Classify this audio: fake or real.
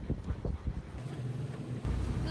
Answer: real